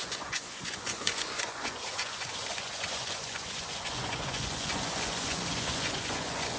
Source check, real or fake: fake